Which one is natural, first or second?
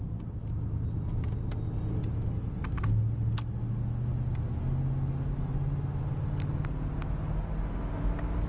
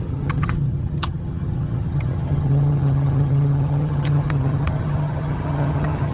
first